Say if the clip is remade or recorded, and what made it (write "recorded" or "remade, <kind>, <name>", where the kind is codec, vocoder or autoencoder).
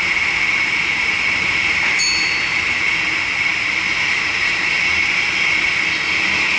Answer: recorded